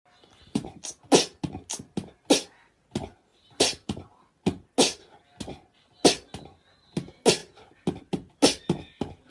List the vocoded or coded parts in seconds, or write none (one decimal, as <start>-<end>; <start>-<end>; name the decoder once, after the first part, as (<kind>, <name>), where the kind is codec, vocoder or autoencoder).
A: 0.0-1.0 (vocoder, BigVGAN v2); 3.3-4.2